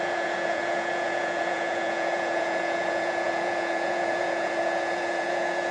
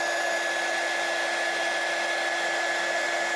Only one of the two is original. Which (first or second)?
second